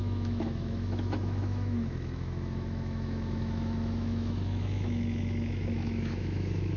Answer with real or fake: fake